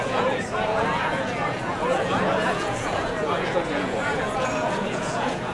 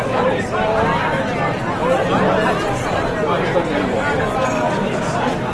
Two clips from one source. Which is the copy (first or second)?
first